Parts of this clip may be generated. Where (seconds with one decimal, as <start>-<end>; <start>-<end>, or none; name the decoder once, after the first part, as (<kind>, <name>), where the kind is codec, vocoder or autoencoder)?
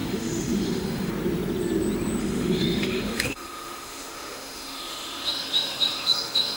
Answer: 0.0-1.1 (autoencoder, DAC-VAE); 2.2-6.6